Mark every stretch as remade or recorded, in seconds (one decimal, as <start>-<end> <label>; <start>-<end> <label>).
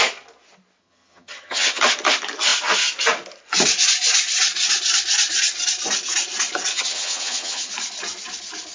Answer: 0.0-0.8 recorded; 0.8-1.8 remade; 1.8-6.7 recorded; 6.7-7.7 remade; 7.7-8.7 recorded